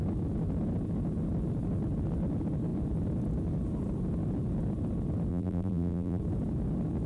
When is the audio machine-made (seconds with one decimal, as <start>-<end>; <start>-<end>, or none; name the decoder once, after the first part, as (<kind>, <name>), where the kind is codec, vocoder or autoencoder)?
5.3-6.2 (vocoder, BigVGAN v2)